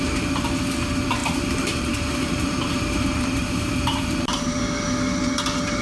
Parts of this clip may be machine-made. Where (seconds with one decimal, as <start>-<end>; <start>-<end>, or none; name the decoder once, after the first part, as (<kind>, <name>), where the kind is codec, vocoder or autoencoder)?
1.2-4.6 (vocoder, BigVGAN v2)